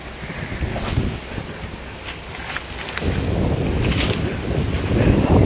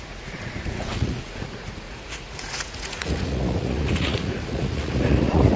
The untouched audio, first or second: first